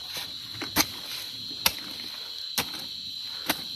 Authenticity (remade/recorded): recorded